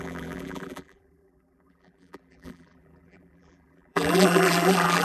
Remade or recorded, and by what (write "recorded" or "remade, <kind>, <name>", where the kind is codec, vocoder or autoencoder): remade, vocoder, BigVGAN v2